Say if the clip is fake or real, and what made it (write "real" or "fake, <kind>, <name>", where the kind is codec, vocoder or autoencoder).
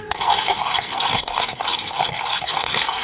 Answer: fake, codec, SNAC